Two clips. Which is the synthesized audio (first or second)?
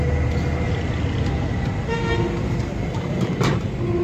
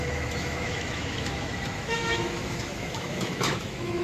second